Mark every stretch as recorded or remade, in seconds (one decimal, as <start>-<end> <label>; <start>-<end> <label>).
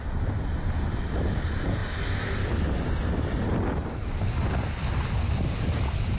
0.0-6.2 recorded